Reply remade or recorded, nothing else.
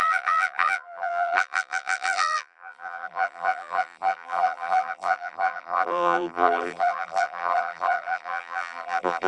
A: remade